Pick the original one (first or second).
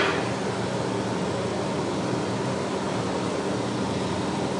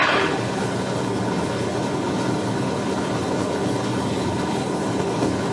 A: first